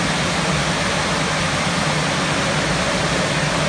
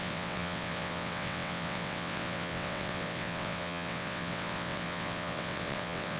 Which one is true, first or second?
first